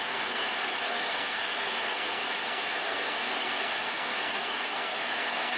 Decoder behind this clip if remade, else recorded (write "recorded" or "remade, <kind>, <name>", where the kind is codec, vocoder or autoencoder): remade, codec, SNAC